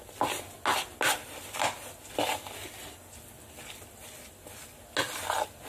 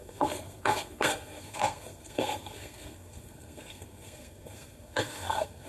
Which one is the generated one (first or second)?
second